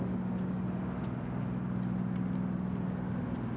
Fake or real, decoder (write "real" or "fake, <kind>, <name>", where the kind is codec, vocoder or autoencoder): real